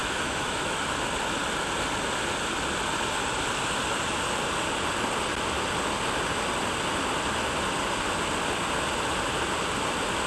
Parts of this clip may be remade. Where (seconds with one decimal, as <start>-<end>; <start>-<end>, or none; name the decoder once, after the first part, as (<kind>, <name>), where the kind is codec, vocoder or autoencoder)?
0.0-0.8 (autoencoder, DAC-VAE)